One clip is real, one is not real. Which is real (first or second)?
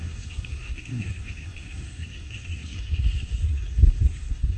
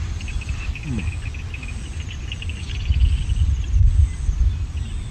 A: second